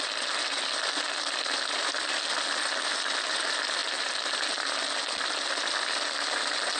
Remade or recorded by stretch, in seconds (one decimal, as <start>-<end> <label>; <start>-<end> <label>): 0.0-6.8 recorded